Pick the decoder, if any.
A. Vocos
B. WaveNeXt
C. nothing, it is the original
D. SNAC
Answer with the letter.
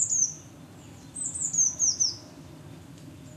C